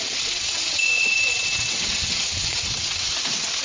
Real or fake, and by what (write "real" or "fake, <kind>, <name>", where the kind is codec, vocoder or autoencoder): fake, vocoder, WaveNeXt